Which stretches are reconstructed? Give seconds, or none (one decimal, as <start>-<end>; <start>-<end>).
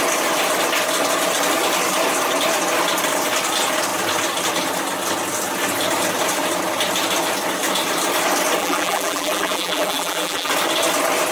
8.6-10.5